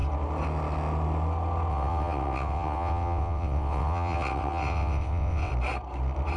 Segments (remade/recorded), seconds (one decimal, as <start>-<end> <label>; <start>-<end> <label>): 0.0-1.7 recorded; 1.7-5.5 remade; 5.5-6.4 recorded